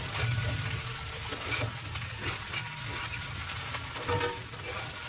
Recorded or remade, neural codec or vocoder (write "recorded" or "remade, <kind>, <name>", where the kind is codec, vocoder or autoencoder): recorded